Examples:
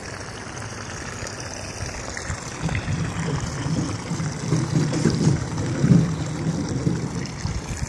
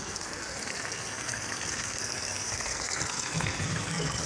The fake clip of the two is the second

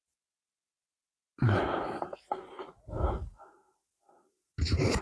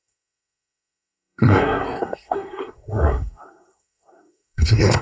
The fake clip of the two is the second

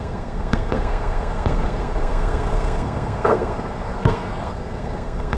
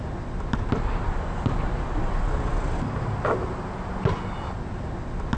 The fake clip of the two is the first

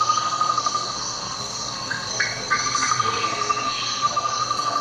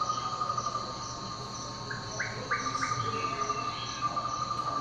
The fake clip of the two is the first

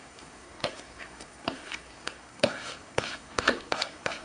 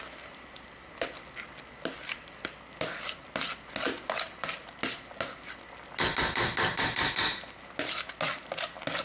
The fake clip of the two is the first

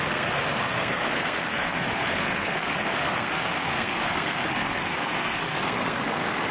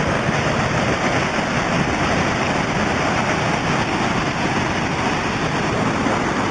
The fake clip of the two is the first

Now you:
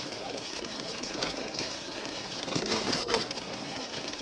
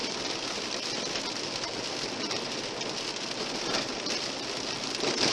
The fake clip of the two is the first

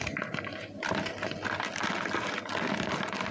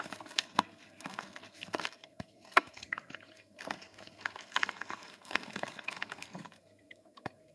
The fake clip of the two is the second